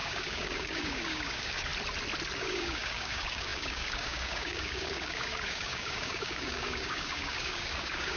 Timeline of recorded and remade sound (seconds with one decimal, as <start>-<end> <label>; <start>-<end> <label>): 0.0-1.7 remade; 1.7-2.4 recorded; 2.4-8.2 remade